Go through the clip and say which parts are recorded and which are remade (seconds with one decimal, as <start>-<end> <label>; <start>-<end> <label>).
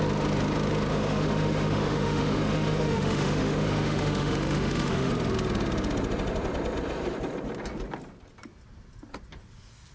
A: 0.0-0.9 recorded; 0.9-5.1 remade; 5.1-9.9 recorded